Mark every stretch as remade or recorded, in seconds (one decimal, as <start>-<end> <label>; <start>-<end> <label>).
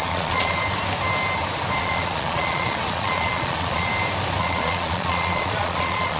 0.0-0.6 remade; 0.6-1.8 recorded; 1.8-3.9 remade; 3.9-4.4 recorded; 4.4-6.2 remade